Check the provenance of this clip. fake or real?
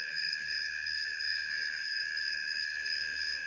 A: fake